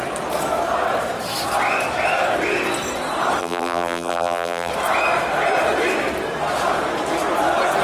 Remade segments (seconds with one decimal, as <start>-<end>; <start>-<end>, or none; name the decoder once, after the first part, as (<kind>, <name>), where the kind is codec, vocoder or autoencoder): 3.4-4.7 (vocoder, BigVGAN v2)